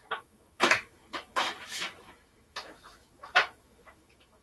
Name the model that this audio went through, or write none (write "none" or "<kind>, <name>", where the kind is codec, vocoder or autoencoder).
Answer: autoencoder, DAC-VAE